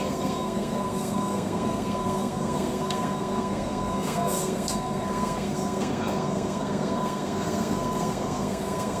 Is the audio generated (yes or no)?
yes